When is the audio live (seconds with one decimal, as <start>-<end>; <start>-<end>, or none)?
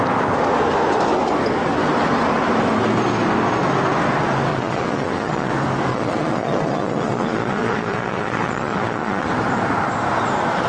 0.0-4.5; 5.5-5.9; 9.3-10.7